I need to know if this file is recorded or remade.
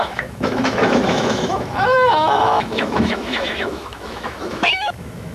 remade